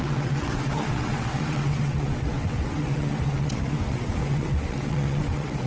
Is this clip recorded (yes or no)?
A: no